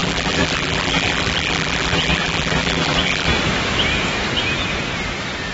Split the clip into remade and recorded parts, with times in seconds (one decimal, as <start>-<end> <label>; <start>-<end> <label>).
0.0-3.3 remade; 3.3-5.5 recorded